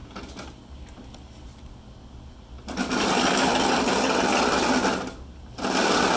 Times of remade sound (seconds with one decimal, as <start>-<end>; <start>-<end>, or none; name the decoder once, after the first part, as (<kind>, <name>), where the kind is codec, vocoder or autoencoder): none